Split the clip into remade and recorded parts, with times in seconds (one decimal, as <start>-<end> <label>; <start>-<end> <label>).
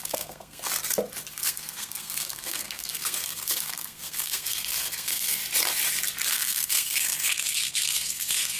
0.0-0.7 remade; 0.7-1.3 recorded; 1.3-5.4 remade; 5.4-6.3 recorded; 6.3-8.6 remade